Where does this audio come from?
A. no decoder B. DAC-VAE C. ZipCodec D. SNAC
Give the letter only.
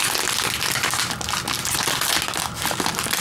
A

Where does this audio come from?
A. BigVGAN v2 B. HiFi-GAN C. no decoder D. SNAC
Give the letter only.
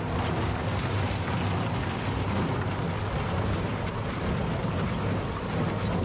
C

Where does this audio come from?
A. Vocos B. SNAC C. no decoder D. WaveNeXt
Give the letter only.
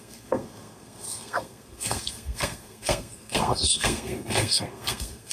B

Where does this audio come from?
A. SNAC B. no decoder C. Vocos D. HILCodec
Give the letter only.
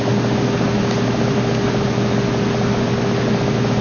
B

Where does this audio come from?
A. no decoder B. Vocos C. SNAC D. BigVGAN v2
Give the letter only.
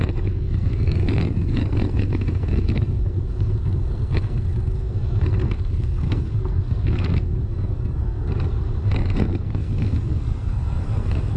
C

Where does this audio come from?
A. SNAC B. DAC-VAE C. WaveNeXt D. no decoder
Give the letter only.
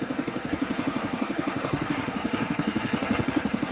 A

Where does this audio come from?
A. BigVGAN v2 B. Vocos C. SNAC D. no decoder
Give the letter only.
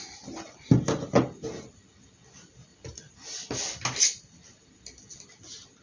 D